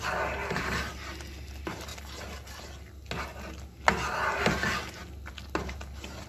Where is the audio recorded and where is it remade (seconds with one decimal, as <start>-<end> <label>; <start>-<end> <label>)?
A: 0.0-0.4 recorded; 0.4-1.0 remade; 1.0-6.3 recorded